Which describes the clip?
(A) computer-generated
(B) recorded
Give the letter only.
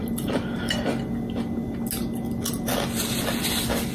B